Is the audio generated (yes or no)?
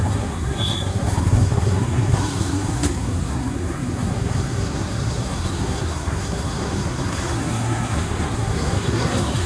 yes